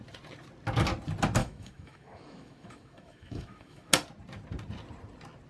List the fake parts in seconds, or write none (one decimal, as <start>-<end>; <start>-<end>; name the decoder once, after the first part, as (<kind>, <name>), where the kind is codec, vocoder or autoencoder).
1.4-3.9 (autoencoder, DAC-VAE)